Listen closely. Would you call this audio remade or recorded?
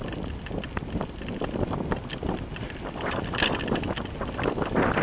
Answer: recorded